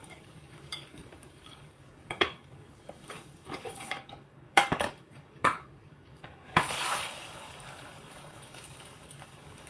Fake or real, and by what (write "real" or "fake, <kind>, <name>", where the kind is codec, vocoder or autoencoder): fake, codec, DAC